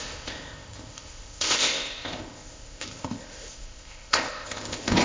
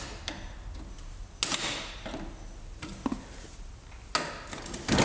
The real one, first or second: second